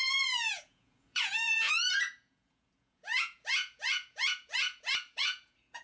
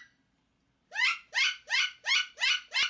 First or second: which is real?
second